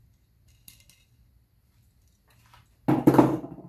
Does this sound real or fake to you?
real